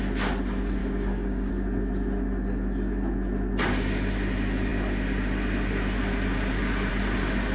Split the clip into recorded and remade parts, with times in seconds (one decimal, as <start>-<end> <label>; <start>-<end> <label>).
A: 0.0-0.8 recorded; 0.8-1.5 remade; 1.5-7.5 recorded

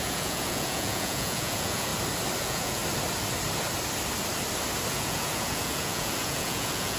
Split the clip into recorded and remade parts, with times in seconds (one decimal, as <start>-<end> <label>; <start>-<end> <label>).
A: 0.0-1.9 remade; 1.9-2.4 recorded; 2.4-2.8 remade; 2.8-4.9 recorded; 4.9-7.0 remade

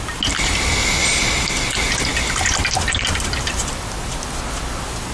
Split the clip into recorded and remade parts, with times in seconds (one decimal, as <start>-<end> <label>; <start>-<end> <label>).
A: 0.0-1.0 recorded; 1.0-1.7 remade; 1.7-5.1 recorded